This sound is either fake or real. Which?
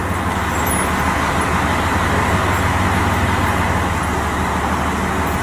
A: real